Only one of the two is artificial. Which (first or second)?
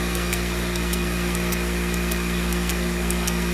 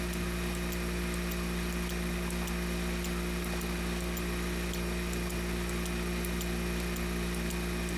first